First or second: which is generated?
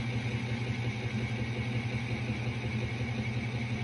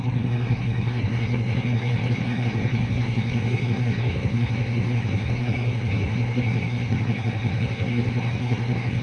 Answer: second